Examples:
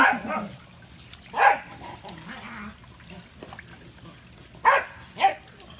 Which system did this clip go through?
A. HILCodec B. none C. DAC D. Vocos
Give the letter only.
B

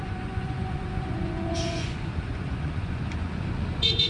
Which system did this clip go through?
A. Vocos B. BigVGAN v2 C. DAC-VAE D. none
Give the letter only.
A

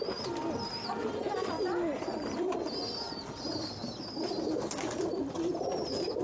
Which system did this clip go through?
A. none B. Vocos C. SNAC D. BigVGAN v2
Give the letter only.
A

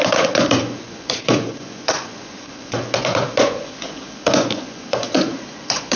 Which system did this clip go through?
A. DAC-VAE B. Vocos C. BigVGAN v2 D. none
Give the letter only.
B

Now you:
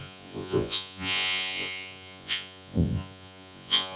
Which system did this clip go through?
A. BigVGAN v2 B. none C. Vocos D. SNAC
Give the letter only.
C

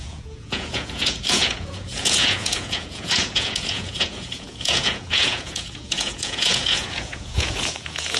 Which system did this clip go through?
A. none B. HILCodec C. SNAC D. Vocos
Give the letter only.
D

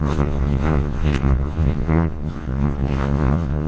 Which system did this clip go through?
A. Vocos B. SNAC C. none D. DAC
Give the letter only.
A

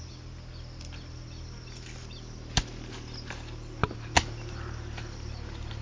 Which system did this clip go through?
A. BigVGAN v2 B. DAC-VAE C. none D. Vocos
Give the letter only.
C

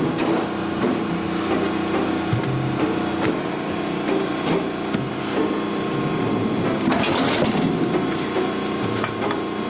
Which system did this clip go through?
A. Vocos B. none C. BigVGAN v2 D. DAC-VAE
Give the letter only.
B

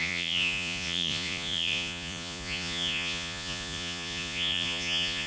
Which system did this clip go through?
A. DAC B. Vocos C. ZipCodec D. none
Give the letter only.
B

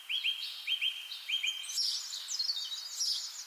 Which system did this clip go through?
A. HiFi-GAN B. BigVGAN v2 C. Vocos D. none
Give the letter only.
D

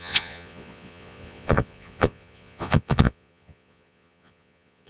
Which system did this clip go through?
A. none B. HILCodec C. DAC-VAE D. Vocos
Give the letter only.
D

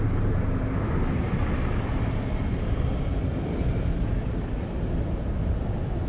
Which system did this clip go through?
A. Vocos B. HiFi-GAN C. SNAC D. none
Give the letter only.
D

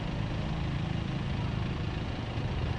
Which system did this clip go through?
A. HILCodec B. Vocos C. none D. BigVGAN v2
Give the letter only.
C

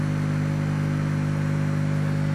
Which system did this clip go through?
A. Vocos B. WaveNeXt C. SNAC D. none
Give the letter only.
D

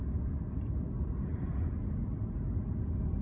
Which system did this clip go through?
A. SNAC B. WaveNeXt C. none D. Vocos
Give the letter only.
C